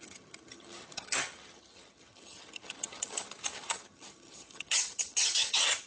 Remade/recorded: remade